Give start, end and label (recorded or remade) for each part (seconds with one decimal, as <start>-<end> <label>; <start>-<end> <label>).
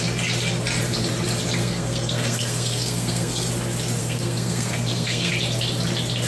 0.0-1.6 recorded; 1.6-3.5 remade; 3.5-4.0 recorded; 4.0-5.3 remade; 5.3-6.3 recorded